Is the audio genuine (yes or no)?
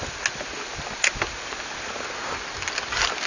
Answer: yes